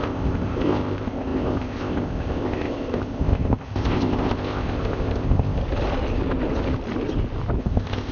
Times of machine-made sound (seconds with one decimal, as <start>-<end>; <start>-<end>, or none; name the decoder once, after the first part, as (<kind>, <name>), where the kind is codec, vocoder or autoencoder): 0.0-5.6 (codec, ZipCodec); 7.6-8.1